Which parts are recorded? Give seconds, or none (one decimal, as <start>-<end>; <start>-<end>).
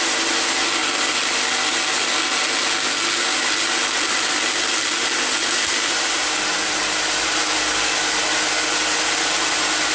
0.0-9.9